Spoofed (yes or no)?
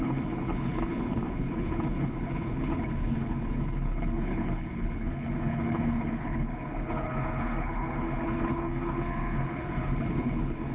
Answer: yes